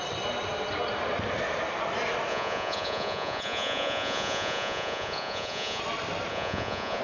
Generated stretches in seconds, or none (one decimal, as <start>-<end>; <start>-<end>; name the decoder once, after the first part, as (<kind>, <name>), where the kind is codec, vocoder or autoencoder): 2.3-5.8 (vocoder, Vocos); 6.3-7.0